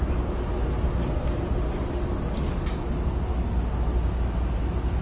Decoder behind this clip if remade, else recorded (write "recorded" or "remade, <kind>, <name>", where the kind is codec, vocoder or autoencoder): recorded